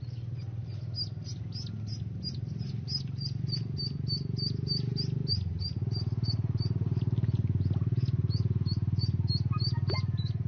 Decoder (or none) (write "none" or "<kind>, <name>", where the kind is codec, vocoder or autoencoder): none